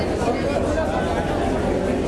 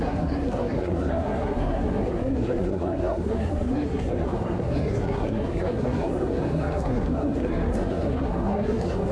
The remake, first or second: second